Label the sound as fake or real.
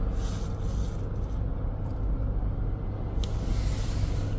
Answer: real